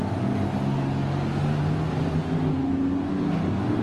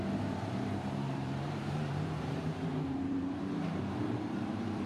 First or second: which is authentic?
first